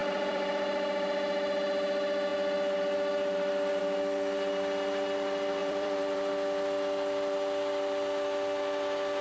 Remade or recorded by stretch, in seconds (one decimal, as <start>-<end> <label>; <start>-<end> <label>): 0.0-0.5 remade; 0.5-5.6 recorded; 5.6-6.3 remade; 6.3-9.2 recorded

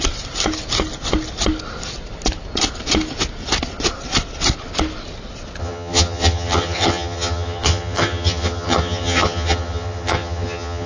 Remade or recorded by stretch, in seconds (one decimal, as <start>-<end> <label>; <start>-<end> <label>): 0.0-5.6 recorded; 5.6-10.9 remade